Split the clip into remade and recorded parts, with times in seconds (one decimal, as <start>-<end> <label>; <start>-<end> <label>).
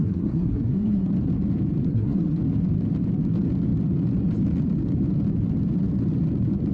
0.0-1.1 remade; 1.1-1.8 recorded; 1.8-2.4 remade; 2.4-6.7 recorded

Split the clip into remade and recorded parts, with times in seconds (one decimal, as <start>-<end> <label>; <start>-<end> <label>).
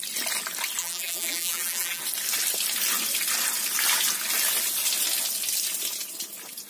0.0-0.8 recorded; 0.8-2.0 remade; 2.0-6.7 recorded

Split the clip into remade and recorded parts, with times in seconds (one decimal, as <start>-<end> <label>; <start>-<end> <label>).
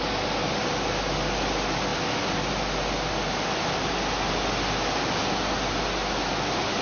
0.0-6.8 recorded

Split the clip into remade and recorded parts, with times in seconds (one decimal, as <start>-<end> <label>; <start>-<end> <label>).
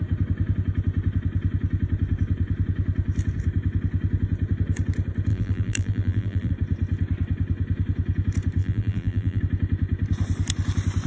0.0-5.3 recorded; 5.3-6.5 remade; 6.5-8.6 recorded; 8.6-9.4 remade; 9.4-11.1 recorded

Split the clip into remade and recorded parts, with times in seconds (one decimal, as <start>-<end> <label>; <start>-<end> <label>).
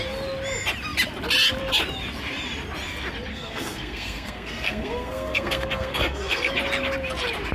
0.0-3.3 recorded; 3.3-6.5 remade; 6.5-7.5 recorded